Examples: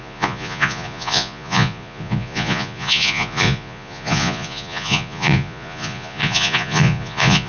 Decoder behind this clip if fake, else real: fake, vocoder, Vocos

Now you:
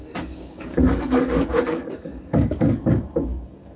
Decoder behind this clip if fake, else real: fake, codec, DAC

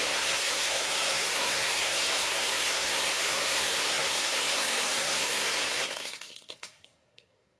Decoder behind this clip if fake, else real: fake, codec, SNAC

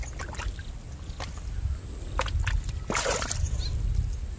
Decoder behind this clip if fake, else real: real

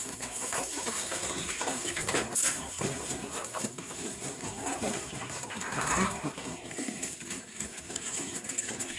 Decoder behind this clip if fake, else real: fake, codec, SNAC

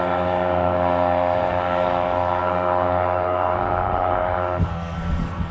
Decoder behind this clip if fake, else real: fake, codec, SNAC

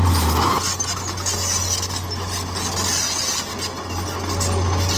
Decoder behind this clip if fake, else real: real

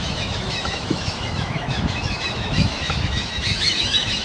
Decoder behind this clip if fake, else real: fake, autoencoder, DAC-VAE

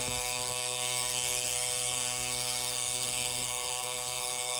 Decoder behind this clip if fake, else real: fake, codec, SNAC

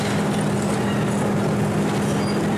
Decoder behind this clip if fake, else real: real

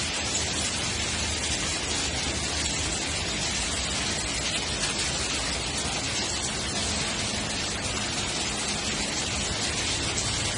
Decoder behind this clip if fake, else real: real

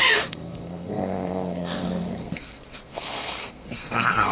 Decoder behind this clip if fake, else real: fake, codec, SNAC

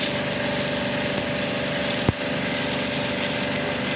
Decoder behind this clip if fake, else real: real